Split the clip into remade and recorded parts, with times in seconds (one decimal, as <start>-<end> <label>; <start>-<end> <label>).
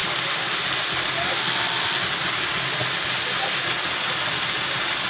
0.0-5.1 recorded